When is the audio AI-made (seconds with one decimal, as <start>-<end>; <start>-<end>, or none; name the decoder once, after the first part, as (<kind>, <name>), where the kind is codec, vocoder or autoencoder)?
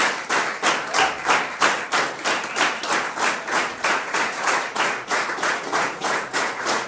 3.5-6.9 (vocoder, Vocos)